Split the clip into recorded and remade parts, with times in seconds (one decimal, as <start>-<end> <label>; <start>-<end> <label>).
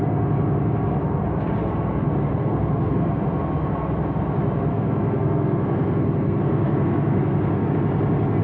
0.0-2.4 recorded; 2.4-3.1 remade; 3.1-4.7 recorded; 4.7-7.7 remade; 7.7-8.4 recorded